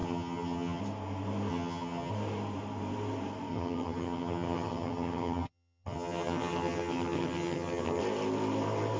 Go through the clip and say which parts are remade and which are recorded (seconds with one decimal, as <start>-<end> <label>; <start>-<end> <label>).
0.0-0.8 remade; 0.8-1.5 recorded; 1.5-2.1 remade; 2.1-3.5 recorded; 3.5-8.0 remade; 8.0-9.0 recorded

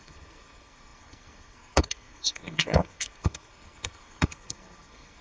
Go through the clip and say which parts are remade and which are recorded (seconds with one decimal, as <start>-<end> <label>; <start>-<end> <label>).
0.0-5.2 remade

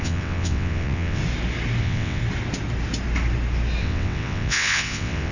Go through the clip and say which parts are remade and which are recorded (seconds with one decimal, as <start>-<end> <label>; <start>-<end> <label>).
0.0-1.2 remade; 1.2-1.8 recorded; 1.8-2.2 remade; 2.2-3.8 recorded; 3.8-5.3 remade

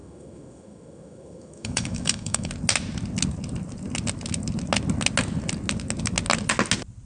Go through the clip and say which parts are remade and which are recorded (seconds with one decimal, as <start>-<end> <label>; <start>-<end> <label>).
0.0-2.5 remade; 2.5-7.0 recorded

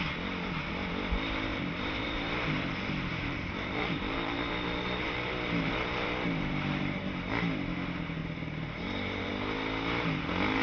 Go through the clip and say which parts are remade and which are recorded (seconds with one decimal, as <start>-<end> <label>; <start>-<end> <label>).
0.0-1.5 recorded; 1.5-6.5 remade; 6.5-8.2 recorded; 8.2-9.3 remade; 9.3-10.6 recorded

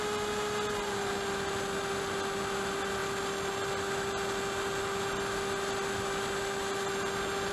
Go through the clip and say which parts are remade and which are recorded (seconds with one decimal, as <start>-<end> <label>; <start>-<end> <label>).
0.0-7.5 recorded

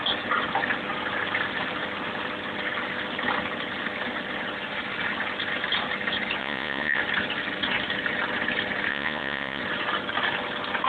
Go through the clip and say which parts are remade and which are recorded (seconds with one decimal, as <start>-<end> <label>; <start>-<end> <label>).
0.0-6.4 recorded; 6.4-7.0 remade; 7.0-8.9 recorded; 8.9-9.6 remade; 9.6-10.9 recorded

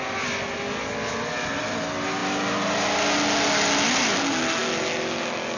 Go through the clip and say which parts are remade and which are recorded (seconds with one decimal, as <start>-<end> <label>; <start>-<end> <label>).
0.0-5.6 recorded